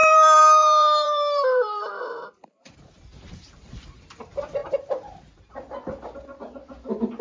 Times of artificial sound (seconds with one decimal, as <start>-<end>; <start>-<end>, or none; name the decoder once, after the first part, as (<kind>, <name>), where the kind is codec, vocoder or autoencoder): 0.0-3.5 (vocoder, BigVGAN v2); 4.6-5.5

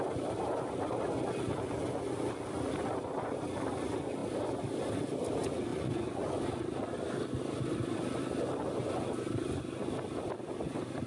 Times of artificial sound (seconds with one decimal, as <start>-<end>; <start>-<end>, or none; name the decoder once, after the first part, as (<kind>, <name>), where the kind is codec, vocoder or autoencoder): 5.7-6.4 (vocoder, Vocos)